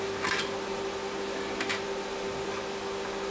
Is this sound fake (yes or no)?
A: no